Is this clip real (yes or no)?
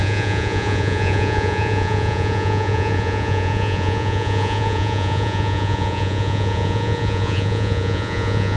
no